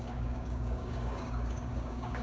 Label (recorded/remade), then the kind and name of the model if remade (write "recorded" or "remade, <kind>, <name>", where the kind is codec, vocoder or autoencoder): remade, codec, DAC